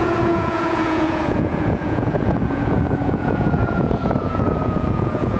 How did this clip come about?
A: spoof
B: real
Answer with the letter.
A